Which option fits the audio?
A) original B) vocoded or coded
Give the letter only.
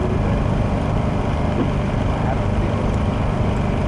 A